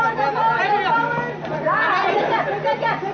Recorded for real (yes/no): yes